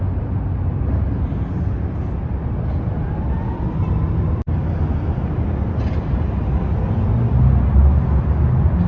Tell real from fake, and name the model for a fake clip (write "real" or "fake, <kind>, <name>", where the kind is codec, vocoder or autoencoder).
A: real